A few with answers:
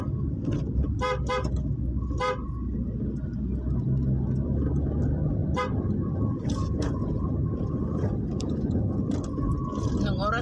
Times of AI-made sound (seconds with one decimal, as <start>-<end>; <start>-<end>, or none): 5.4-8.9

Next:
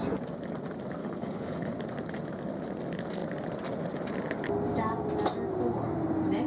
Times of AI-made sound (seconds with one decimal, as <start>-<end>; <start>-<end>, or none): 1.0-1.8

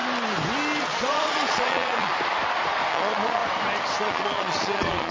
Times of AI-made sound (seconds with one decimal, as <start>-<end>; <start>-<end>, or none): 0.8-2.1; 2.9-3.4; 4.0-5.1

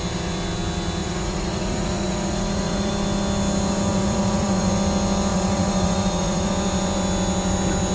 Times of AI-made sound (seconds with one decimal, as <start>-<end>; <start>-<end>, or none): 1.0-2.9; 3.9-4.7; 5.3-6.5

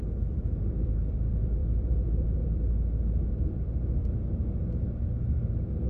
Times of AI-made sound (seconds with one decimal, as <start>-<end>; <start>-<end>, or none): 0.0-4.0; 5.5-5.9

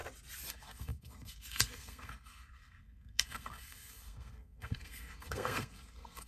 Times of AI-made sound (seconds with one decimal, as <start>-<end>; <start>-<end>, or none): 0.5-6.3